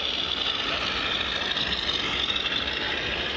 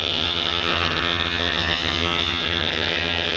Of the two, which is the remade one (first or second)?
second